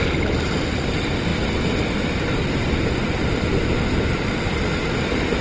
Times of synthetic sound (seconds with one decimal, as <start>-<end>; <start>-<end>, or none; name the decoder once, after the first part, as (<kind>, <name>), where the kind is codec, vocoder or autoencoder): none